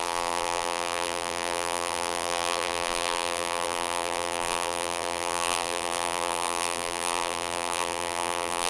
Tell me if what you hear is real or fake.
fake